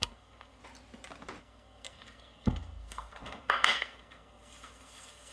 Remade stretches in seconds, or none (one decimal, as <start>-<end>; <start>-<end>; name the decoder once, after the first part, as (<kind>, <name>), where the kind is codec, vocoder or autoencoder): 0.0-0.6 (codec, SNAC); 1.4-5.3